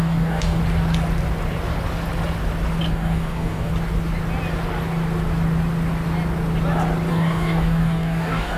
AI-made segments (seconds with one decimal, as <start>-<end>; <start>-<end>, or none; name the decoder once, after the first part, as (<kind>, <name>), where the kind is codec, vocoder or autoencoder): 0.0-0.6 (codec, DAC); 2.9-3.7; 7.1-8.6